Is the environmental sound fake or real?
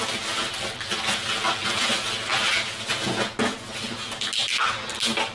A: real